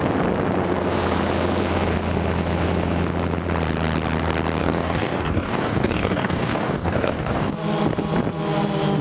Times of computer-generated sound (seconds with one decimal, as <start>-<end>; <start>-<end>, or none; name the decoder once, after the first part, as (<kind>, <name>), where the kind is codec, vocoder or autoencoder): 4.6-7.5 (codec, DAC)